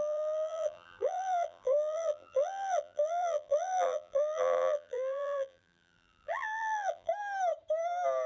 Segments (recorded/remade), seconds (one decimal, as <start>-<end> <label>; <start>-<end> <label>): 0.0-7.1 remade; 7.1-8.3 recorded